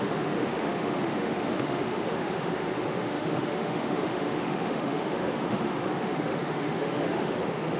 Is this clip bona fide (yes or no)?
no